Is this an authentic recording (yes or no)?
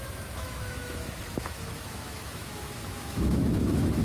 no